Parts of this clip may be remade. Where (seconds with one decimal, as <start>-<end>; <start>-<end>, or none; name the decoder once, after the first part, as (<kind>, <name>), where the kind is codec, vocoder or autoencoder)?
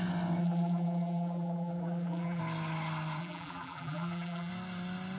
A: 0.4-2.4 (vocoder, BigVGAN v2); 3.2-4.5